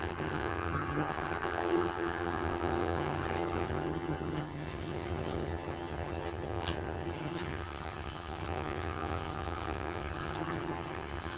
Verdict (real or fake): fake